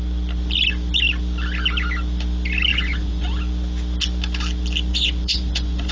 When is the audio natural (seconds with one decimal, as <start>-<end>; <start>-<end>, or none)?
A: 0.0-2.7; 3.4-4.9